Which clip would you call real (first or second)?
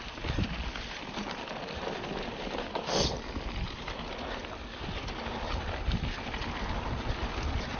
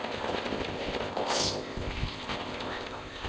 first